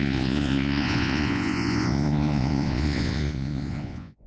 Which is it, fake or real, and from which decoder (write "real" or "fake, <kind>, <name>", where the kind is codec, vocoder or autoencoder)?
fake, vocoder, Vocos